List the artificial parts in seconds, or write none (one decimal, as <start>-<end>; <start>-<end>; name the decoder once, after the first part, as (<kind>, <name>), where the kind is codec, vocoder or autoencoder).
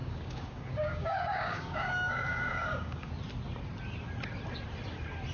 0.0-3.1 (codec, DAC)